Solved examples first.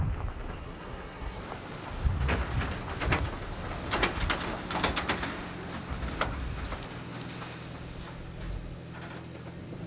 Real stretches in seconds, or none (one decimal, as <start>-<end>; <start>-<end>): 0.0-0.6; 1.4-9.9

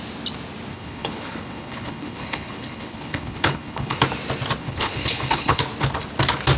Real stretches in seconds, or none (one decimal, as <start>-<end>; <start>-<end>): 0.0-0.7; 4.0-4.6; 5.6-6.6

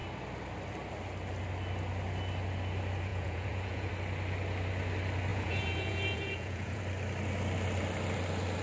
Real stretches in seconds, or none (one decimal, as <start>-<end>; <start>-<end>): 0.0-3.1; 3.9-5.3; 6.8-8.6

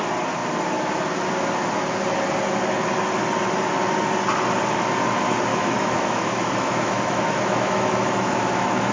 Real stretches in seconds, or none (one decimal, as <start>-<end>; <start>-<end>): 0.0-5.5

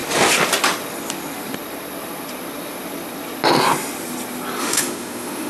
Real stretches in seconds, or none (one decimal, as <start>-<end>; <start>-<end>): 0.0-4.6